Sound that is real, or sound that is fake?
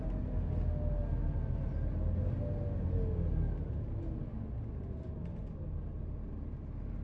real